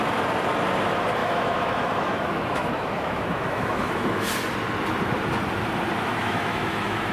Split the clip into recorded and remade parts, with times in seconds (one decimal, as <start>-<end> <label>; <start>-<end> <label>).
0.0-1.2 recorded; 1.2-4.3 remade; 4.3-6.2 recorded; 6.2-7.1 remade